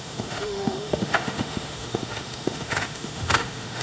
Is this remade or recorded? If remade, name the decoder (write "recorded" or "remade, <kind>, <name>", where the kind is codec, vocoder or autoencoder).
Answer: remade, autoencoder, DAC-VAE